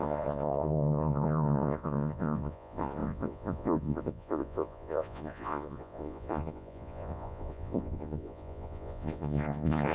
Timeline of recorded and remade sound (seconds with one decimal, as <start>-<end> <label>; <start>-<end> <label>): 0.0-9.9 remade